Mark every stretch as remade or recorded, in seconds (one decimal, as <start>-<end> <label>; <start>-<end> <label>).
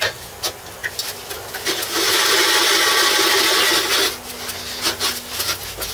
0.0-5.9 recorded